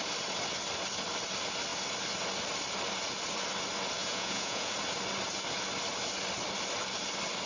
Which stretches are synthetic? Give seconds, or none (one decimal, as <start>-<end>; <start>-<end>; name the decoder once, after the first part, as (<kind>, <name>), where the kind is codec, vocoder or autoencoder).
4.0-4.7 (vocoder, Vocos)